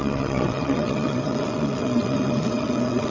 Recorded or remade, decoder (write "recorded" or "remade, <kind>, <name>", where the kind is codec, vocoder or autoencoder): remade, vocoder, WaveNeXt